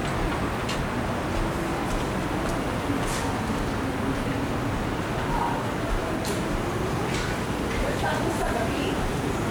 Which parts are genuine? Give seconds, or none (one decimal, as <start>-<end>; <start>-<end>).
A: 0.0-6.0; 8.1-9.5